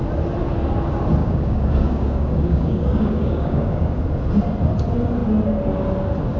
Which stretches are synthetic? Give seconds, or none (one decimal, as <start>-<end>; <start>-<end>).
1.2-4.0